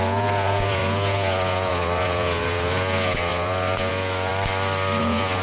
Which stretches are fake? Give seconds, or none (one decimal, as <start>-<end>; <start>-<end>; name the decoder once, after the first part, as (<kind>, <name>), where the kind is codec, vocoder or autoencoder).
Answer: 0.0-4.3 (vocoder, Vocos); 5.0-5.4